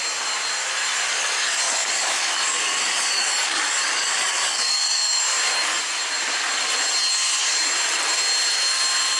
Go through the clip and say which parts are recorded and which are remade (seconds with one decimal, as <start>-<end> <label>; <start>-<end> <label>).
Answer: 0.0-1.1 recorded; 1.1-5.2 remade; 5.2-9.2 recorded